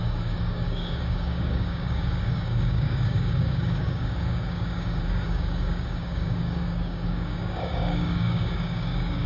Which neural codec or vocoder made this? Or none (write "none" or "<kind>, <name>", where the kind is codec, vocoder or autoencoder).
codec, DAC